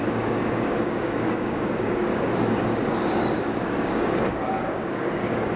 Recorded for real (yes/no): no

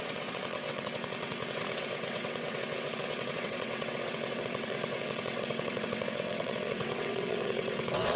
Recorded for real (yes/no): no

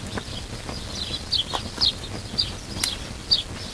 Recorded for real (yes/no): yes